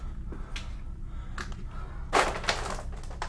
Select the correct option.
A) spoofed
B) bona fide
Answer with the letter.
B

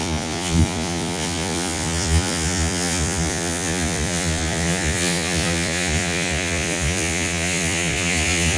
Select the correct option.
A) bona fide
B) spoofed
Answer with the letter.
B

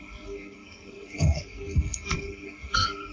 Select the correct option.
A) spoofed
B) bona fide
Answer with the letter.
A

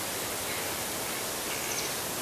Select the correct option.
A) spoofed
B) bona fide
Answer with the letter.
B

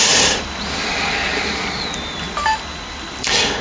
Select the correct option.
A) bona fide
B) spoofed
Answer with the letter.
B